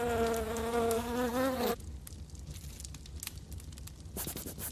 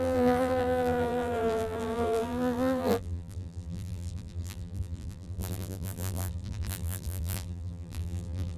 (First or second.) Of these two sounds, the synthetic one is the second